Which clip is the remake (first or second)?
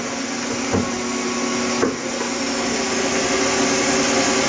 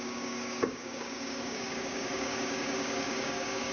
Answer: second